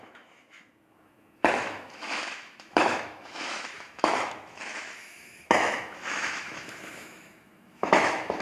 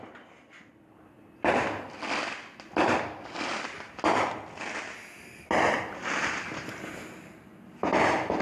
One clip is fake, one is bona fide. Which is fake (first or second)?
first